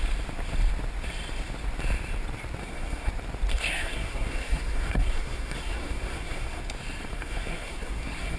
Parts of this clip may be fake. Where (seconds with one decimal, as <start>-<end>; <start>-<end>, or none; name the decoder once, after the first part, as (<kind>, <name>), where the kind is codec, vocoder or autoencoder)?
2.6-3.1 (codec, SNAC); 3.5-6.6; 7.1-8.4